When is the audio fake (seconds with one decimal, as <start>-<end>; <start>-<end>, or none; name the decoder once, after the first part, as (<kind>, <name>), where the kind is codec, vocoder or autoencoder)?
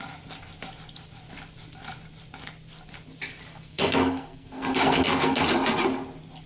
3.5-5.4 (codec, SNAC)